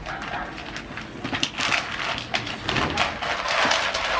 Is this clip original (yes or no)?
yes